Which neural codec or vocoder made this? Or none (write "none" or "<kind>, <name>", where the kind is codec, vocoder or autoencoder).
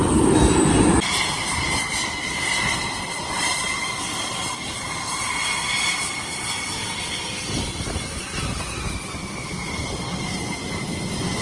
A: none